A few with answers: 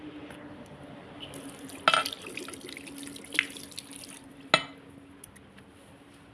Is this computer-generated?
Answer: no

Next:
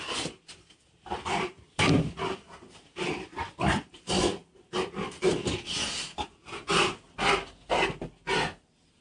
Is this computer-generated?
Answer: no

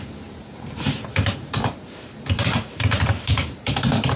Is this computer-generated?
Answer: yes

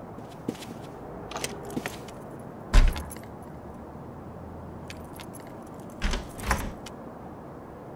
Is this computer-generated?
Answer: no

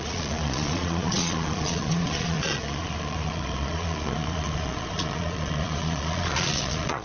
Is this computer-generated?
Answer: yes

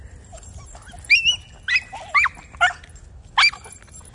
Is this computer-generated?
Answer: no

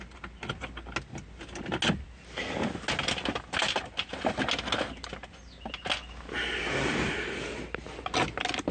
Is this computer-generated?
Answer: no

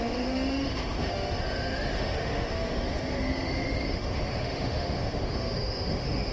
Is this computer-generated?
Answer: yes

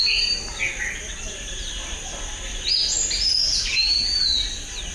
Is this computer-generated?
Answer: no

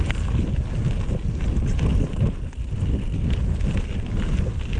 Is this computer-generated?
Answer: no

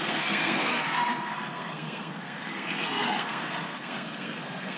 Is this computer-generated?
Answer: yes